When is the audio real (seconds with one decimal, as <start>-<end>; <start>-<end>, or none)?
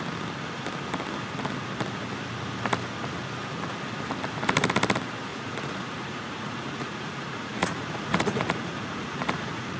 0.0-5.3